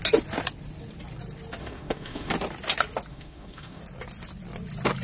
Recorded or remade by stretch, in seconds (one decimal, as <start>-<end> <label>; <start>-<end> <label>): 0.0-1.6 recorded; 1.6-2.3 remade; 2.3-3.1 recorded; 3.1-3.8 remade; 3.8-5.0 recorded

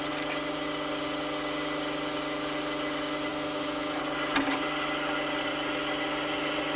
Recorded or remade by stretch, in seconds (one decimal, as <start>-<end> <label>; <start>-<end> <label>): 0.0-3.3 recorded; 3.3-4.0 remade; 4.0-6.8 recorded

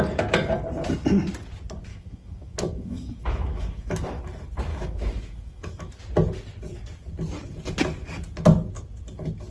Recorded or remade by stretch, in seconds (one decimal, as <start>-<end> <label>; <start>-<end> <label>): 0.0-1.9 recorded; 1.9-4.2 remade; 4.2-4.7 recorded; 4.7-5.9 remade; 5.9-9.5 recorded

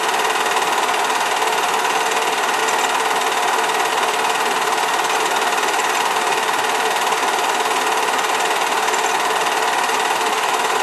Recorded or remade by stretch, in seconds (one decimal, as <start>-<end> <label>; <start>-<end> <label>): 0.0-10.3 recorded; 10.3-10.8 remade